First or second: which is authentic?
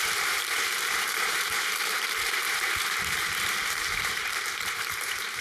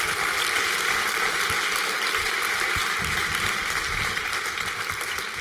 second